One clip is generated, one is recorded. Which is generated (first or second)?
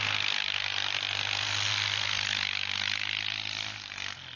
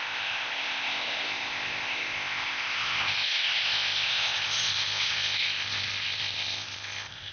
second